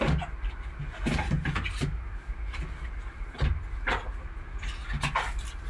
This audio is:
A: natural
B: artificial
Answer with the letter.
A